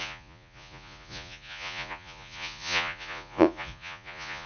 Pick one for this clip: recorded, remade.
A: remade